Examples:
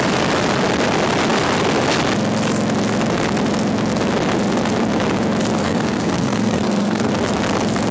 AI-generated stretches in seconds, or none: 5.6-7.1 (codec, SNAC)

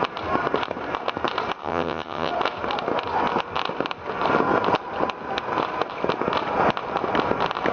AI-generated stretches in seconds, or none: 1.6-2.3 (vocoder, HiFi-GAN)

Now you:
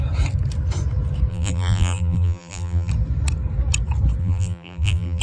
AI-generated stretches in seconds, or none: 1.3-2.9 (vocoder, BigVGAN v2); 4.2-5.2